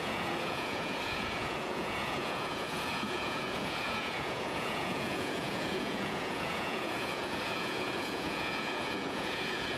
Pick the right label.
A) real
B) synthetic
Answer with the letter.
B